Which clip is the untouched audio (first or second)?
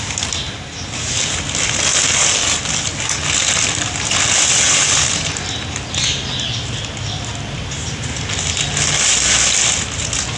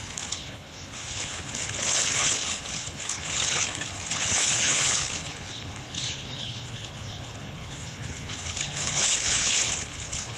first